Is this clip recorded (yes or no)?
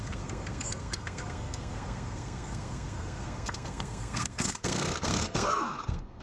no